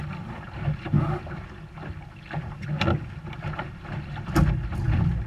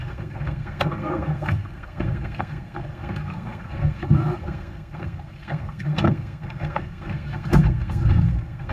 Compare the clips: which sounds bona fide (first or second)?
first